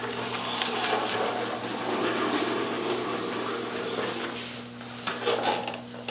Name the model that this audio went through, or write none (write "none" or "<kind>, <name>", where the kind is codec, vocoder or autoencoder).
none